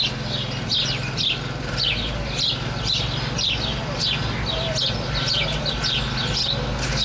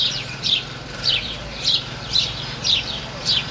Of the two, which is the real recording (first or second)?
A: first